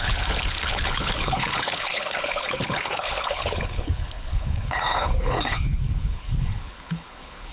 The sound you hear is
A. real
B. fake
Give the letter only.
B